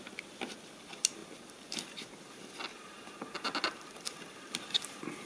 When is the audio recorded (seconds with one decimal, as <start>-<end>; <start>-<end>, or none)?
0.0-5.3